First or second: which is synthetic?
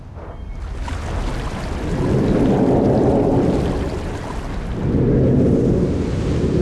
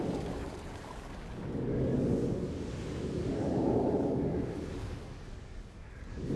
second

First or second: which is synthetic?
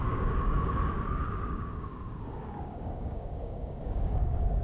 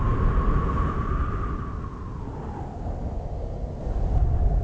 first